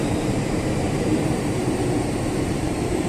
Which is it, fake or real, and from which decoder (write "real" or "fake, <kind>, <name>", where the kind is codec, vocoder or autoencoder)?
fake, vocoder, BigVGAN v2